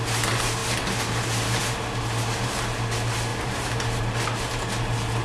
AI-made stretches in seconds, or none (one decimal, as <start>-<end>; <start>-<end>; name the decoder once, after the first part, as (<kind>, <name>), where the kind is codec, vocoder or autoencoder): 3.3-4.0 (vocoder, BigVGAN v2)